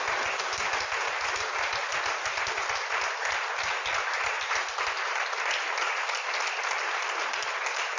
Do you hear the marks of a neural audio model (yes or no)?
no